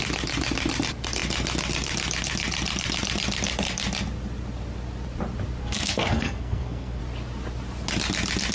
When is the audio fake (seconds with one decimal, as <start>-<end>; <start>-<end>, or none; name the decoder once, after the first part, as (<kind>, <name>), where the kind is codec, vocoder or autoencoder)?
5.6-7.0 (codec, SNAC)